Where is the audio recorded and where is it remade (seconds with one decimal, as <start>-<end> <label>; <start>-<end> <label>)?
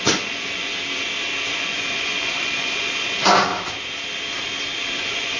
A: 0.0-0.7 remade; 0.7-1.5 recorded; 1.5-3.5 remade; 3.5-5.0 recorded; 5.0-5.4 remade